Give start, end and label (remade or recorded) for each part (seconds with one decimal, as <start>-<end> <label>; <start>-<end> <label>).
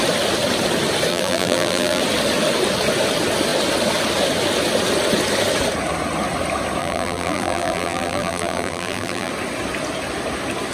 0.0-1.1 recorded; 1.1-2.0 remade; 2.0-6.8 recorded; 6.8-9.3 remade; 9.3-10.7 recorded